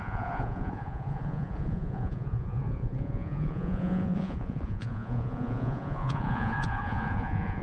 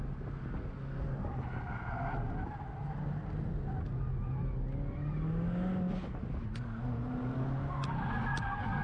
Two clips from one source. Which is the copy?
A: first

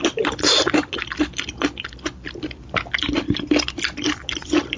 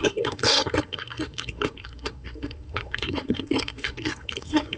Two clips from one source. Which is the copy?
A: second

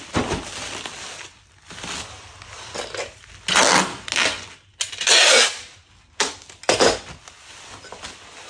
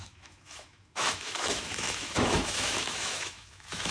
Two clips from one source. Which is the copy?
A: second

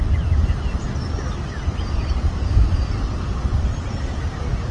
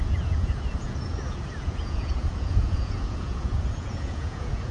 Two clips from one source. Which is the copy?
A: second